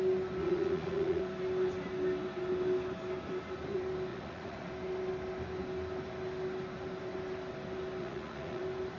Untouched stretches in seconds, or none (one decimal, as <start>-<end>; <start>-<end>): 0.0-0.4; 1.2-4.1; 4.7-8.0; 8.6-9.0